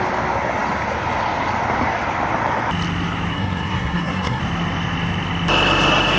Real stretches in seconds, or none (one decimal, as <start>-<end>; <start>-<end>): 0.0-3.3; 4.4-6.2